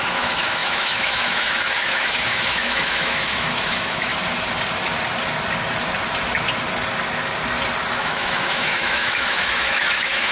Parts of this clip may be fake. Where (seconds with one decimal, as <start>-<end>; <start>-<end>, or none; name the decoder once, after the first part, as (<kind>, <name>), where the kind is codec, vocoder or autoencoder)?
0.0-4.1 (autoencoder, DAC-VAE); 7.9-10.3